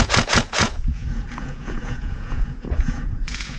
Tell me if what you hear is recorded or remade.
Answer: remade